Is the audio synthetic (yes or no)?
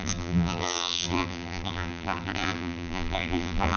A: yes